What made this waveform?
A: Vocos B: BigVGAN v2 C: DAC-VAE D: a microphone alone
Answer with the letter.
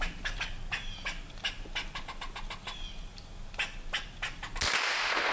D